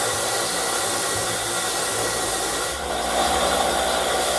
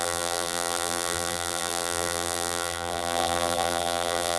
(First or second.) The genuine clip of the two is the first